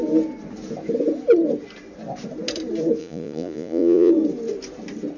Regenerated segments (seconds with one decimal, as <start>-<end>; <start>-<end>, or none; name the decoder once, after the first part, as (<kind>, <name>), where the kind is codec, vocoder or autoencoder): 3.0-4.1 (vocoder, Vocos)